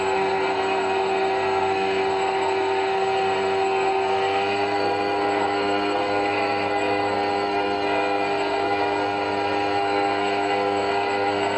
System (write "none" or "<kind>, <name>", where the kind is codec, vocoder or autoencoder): codec, SNAC